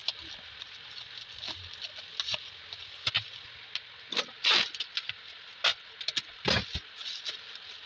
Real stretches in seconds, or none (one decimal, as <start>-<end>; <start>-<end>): 0.0-7.9

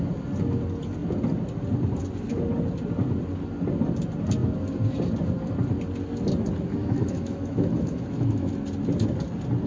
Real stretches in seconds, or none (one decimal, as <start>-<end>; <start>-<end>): 0.0-6.8; 8.5-9.7